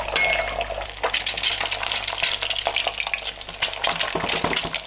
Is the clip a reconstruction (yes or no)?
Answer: no